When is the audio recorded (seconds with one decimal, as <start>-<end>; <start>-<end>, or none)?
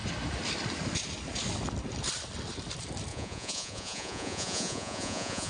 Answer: 0.0-3.1